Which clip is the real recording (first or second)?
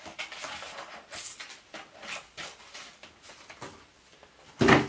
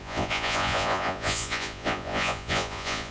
first